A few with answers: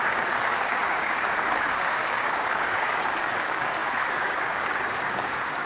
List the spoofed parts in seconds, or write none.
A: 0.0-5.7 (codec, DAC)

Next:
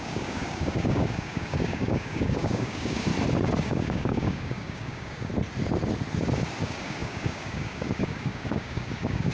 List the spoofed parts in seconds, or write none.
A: 0.0-3.1 (codec, DAC); 3.6-5.3; 6.6-9.3

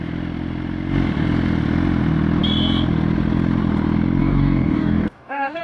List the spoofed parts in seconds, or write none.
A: 4.2-5.6 (codec, DAC)